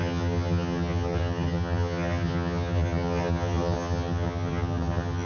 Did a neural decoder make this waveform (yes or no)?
yes